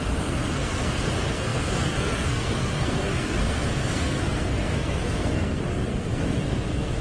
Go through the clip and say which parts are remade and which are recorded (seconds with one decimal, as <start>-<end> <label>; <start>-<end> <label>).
0.0-7.0 remade